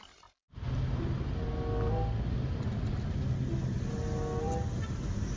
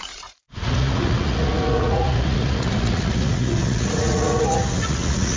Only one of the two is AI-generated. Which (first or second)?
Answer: second